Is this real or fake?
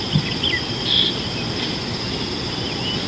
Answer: real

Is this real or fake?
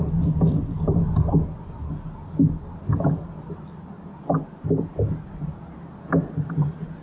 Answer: real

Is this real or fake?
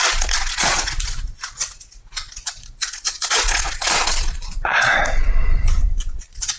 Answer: fake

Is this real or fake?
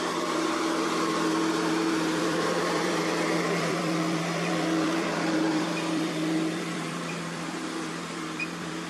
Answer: fake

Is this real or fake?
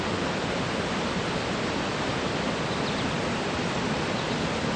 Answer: real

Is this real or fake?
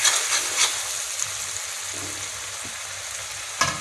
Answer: real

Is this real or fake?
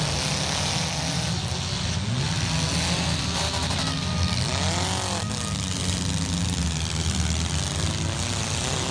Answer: real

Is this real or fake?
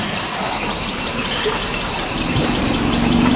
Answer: fake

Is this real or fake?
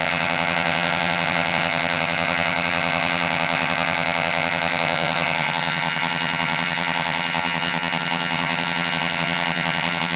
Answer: fake